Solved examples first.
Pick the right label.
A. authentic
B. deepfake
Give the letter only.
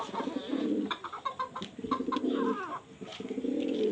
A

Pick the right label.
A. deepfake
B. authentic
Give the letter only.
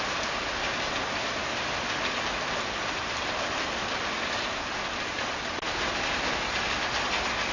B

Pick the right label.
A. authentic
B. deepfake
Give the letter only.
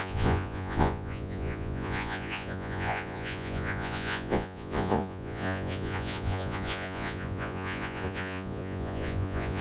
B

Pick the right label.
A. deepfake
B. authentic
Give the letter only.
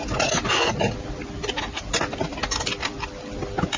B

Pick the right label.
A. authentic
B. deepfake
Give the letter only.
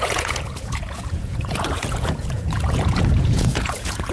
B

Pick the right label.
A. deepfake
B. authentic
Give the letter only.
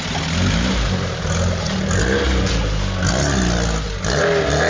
B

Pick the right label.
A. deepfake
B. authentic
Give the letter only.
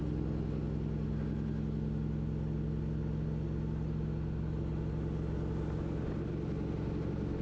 B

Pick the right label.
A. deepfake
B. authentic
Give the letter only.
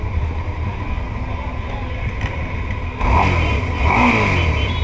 B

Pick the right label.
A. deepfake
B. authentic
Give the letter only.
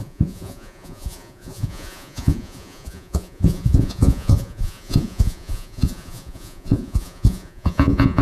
A